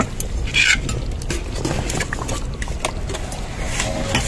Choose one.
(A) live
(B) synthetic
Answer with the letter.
A